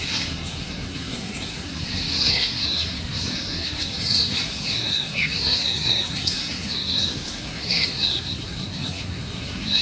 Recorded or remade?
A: remade